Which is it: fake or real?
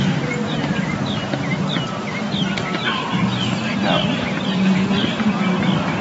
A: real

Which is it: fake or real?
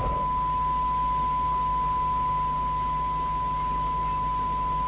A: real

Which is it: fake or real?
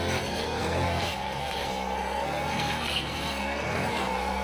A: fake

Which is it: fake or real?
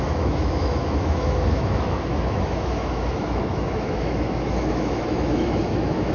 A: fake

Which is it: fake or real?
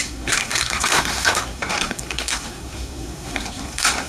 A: fake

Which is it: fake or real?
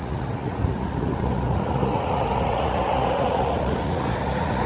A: fake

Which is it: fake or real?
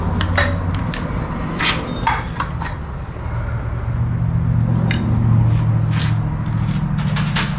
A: real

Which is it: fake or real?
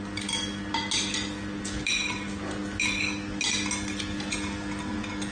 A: real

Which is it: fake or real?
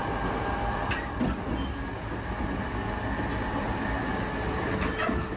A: real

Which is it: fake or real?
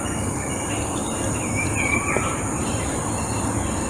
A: real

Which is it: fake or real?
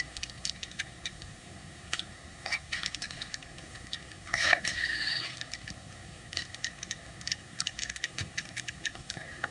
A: fake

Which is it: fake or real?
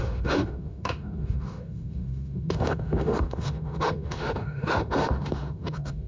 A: fake